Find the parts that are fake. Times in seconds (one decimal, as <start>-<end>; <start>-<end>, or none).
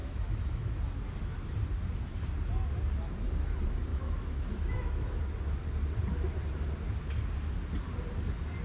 0.0-0.8; 3.9-5.2